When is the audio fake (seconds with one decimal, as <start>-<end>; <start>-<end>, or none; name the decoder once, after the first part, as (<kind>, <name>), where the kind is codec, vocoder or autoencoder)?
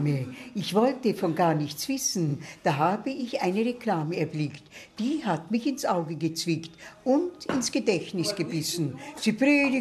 2.3-3.3 (vocoder, Vocos)